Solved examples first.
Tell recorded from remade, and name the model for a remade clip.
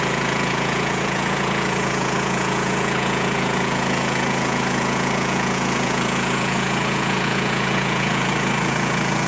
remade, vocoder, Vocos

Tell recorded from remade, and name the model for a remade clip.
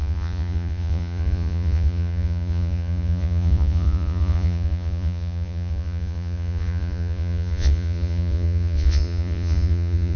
remade, vocoder, Vocos